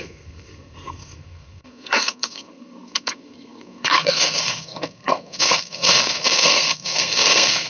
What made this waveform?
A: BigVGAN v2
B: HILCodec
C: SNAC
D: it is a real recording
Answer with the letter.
C